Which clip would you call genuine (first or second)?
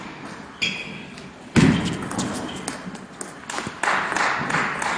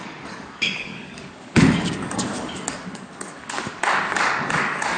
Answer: first